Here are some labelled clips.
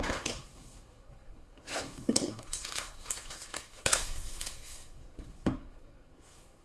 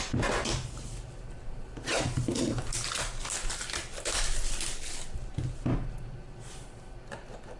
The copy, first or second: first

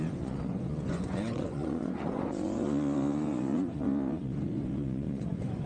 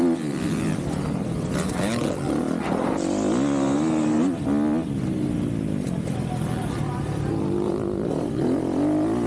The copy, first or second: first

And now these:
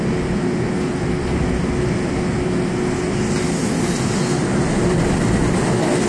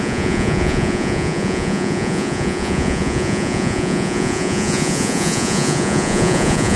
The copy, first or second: second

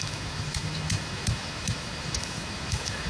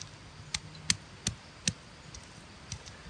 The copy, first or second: first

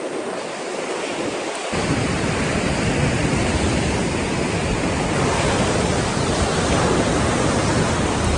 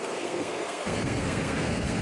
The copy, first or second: second